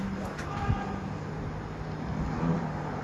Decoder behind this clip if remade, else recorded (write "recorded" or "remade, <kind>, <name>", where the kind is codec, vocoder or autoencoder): recorded